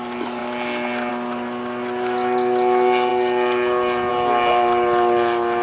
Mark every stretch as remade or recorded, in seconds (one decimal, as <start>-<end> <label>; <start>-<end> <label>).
0.0-5.6 recorded